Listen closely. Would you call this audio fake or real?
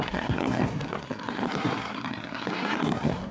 fake